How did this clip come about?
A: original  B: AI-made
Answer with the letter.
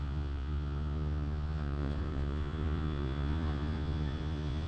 B